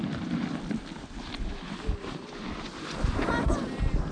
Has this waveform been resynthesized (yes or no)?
no